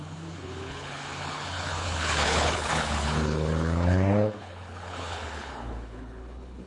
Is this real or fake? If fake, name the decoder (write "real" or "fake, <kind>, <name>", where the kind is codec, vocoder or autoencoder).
fake, codec, HILCodec